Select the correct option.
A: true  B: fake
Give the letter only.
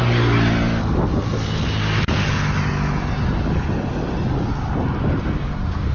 A